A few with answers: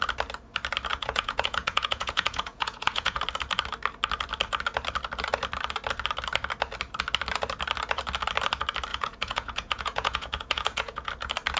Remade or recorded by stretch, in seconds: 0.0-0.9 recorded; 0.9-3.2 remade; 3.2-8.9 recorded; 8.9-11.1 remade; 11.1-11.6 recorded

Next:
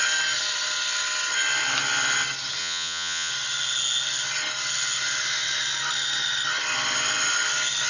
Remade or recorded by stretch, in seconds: 0.0-2.6 recorded; 2.6-3.3 remade; 3.3-7.9 recorded

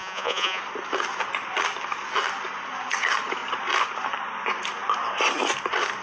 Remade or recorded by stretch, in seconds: 0.0-0.6 remade; 0.6-6.0 recorded

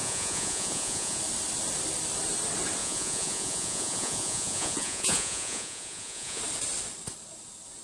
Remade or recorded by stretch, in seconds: 0.0-1.2 remade; 1.2-2.8 recorded; 2.8-6.4 remade; 6.4-7.8 recorded

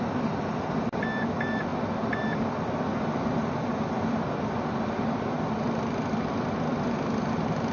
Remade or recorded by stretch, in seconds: 0.0-7.7 recorded

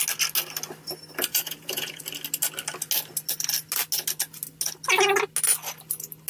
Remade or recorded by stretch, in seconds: 0.0-1.3 recorded; 1.3-2.0 remade; 2.0-6.3 recorded

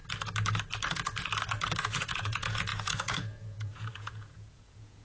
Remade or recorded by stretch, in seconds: 0.0-1.8 recorded; 1.8-5.0 remade

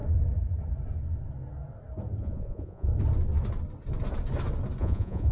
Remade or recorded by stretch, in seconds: 0.0-2.2 recorded; 2.2-2.9 remade; 2.9-4.8 recorded; 4.8-5.3 remade